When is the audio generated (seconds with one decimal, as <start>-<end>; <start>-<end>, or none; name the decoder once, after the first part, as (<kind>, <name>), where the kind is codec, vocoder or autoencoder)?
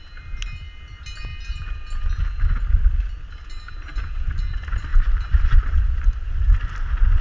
4.9-6.1 (vocoder, BigVGAN v2)